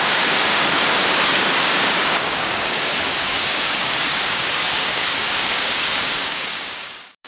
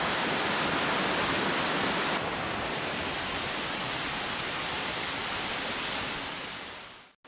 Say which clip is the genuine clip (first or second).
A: second